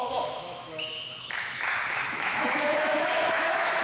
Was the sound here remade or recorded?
remade